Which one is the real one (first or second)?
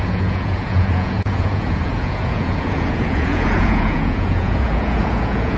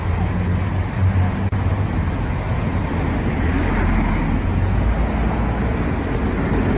second